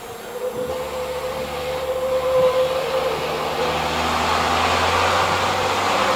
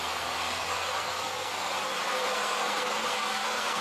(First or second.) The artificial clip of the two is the second